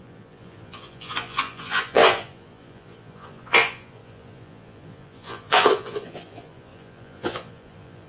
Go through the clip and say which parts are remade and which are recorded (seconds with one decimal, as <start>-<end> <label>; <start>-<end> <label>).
0.0-8.1 remade